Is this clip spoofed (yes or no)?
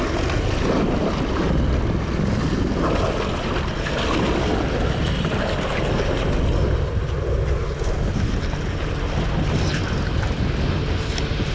no